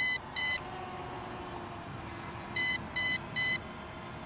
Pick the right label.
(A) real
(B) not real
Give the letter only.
B